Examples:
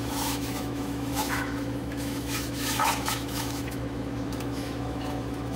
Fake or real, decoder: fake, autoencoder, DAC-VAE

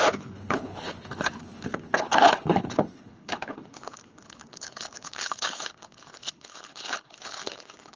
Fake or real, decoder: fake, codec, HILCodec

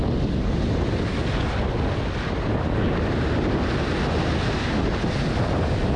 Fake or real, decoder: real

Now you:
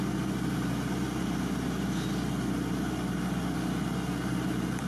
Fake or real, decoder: real